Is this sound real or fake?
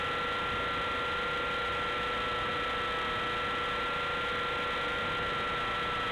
real